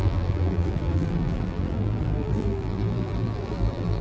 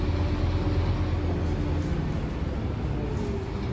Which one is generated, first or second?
first